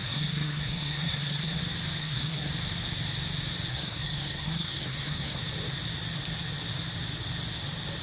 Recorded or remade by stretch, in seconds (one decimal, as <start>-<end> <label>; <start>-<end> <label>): 0.0-1.6 remade; 1.6-2.0 recorded; 2.0-2.5 remade; 2.5-3.7 recorded; 3.7-5.4 remade; 5.4-8.0 recorded